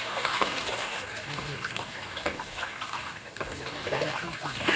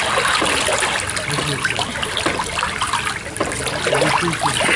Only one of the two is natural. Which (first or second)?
second